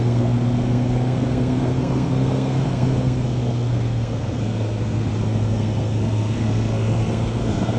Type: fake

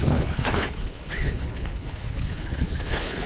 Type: fake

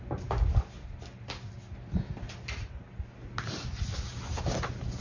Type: real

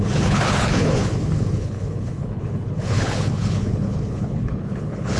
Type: fake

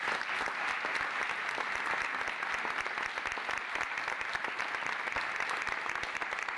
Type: real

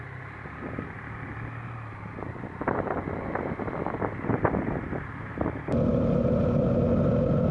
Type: real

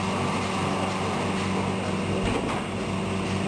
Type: real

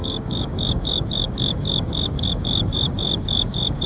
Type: fake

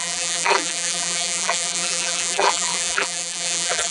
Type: fake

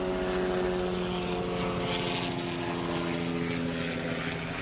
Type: real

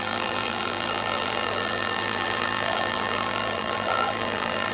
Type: fake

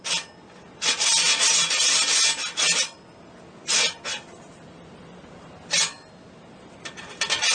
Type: real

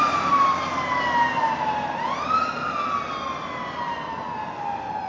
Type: real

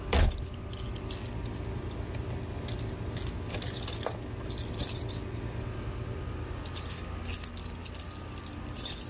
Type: real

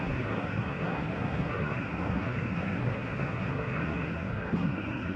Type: fake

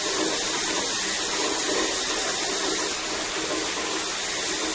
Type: real